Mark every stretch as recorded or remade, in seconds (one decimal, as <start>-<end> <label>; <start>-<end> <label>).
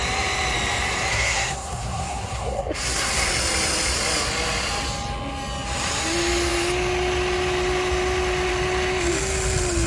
0.0-1.1 recorded; 1.1-3.3 remade; 3.3-9.9 recorded